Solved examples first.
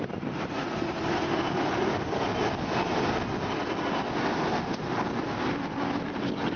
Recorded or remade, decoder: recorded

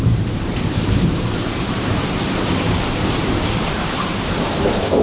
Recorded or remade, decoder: remade, vocoder, BigVGAN v2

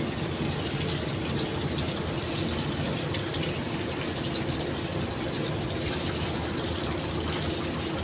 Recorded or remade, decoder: recorded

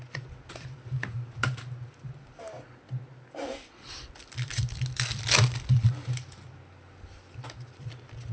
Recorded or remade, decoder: recorded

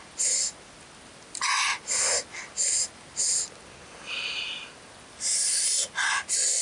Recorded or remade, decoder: recorded